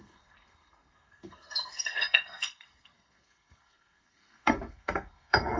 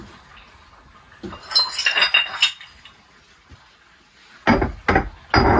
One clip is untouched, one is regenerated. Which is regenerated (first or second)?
first